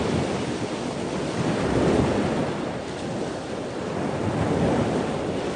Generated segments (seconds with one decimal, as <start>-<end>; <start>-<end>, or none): none